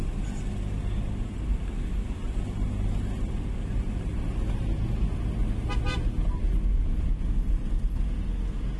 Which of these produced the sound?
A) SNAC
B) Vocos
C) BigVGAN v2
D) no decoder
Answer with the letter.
D